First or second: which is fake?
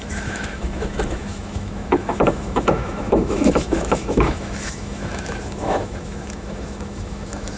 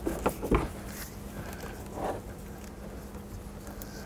first